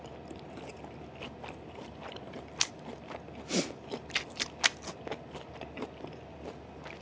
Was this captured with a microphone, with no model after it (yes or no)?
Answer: yes